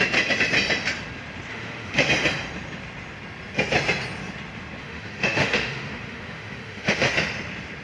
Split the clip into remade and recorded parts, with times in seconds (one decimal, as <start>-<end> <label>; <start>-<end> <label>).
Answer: 0.0-1.5 recorded; 1.5-2.1 remade; 2.1-4.8 recorded; 4.8-7.1 remade; 7.1-7.8 recorded